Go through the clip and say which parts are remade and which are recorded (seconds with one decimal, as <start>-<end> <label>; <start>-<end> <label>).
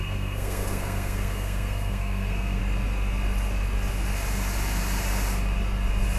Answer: 0.0-2.6 remade; 2.6-6.2 recorded